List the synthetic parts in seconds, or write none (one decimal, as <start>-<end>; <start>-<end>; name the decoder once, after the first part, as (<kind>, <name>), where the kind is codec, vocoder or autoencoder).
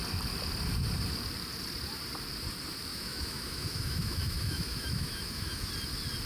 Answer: 2.9-5.7 (autoencoder, DAC-VAE)